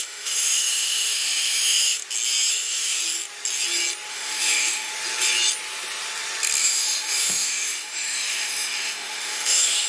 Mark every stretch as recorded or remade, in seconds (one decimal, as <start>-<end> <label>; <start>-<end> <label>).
0.0-2.0 remade; 2.0-2.5 recorded; 2.5-3.0 remade; 3.0-4.1 recorded; 4.1-4.9 remade; 4.9-6.6 recorded; 6.6-9.9 remade